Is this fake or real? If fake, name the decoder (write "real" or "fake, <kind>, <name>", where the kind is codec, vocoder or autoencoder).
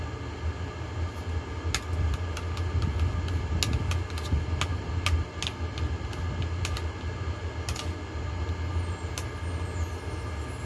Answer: real